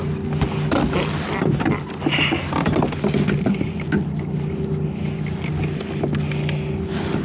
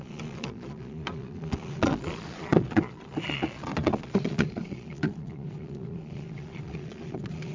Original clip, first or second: first